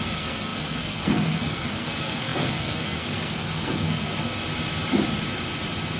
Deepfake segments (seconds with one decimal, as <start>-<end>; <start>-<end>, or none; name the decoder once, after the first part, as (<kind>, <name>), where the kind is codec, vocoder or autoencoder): 0.0-4.1 (codec, SNAC)